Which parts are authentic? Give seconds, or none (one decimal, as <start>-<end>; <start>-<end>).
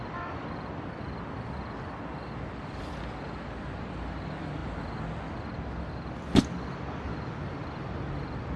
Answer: 0.0-8.6